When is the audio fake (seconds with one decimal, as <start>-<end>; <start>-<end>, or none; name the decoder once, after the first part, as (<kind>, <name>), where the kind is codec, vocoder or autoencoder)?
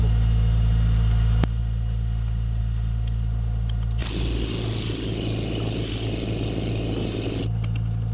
none